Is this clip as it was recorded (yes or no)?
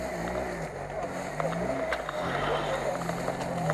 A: yes